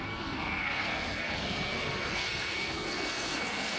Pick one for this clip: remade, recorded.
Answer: remade